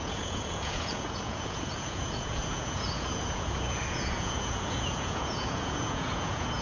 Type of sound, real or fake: fake